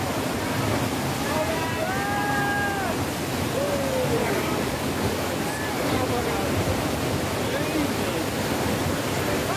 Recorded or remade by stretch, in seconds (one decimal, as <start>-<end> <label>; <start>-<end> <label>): 0.0-4.2 recorded; 4.2-5.4 remade; 5.4-9.6 recorded